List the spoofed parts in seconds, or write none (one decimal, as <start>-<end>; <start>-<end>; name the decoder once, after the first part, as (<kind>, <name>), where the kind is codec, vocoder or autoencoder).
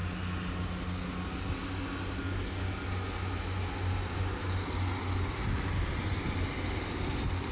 none